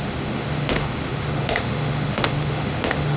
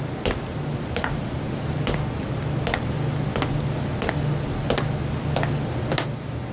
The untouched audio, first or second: second